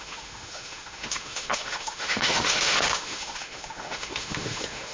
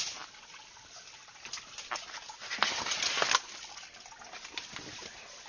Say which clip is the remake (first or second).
first